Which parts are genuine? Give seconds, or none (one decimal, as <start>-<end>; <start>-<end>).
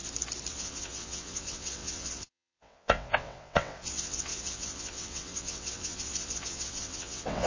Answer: 0.0-0.5